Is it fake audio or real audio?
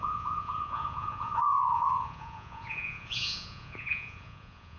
fake